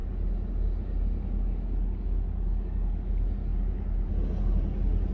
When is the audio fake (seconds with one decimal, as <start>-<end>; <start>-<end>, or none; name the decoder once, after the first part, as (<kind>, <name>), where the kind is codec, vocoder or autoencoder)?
none